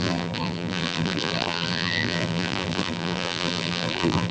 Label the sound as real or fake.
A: fake